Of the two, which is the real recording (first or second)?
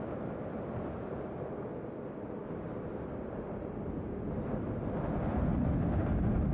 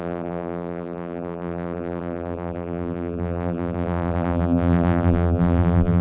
first